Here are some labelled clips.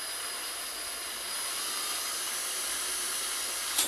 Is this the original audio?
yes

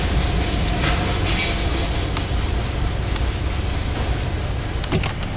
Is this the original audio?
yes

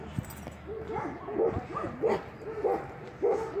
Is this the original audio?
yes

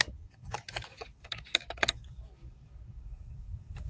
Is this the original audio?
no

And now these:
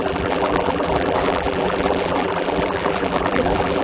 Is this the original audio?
no